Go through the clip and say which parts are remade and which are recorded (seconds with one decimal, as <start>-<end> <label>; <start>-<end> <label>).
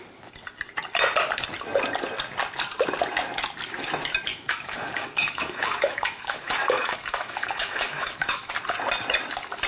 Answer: 0.0-4.3 recorded; 4.3-8.5 remade; 8.5-9.7 recorded